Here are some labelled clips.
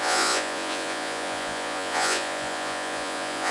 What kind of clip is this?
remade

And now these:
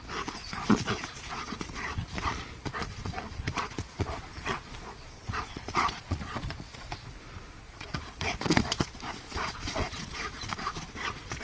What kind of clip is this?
remade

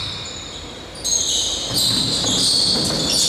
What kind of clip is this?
recorded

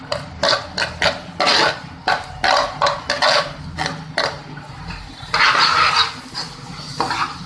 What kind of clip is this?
recorded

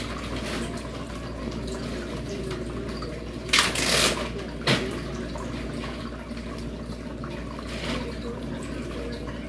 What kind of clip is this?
recorded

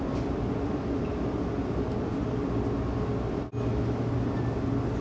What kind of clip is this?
recorded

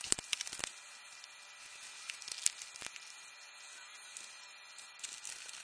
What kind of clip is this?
recorded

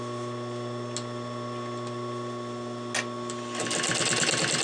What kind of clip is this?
recorded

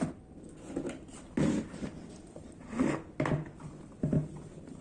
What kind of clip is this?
recorded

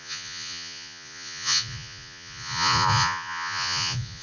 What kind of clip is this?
remade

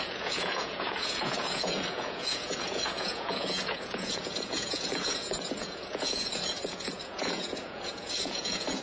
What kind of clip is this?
remade